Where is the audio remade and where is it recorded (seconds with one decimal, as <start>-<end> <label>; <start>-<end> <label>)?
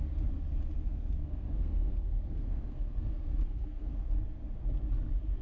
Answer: 0.0-0.9 recorded; 0.9-4.1 remade; 4.1-5.4 recorded